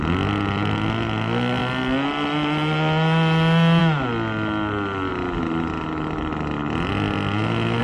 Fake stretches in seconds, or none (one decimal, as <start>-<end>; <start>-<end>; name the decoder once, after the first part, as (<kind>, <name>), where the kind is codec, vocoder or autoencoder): none